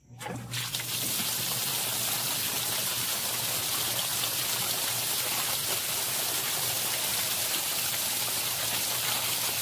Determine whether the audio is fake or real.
real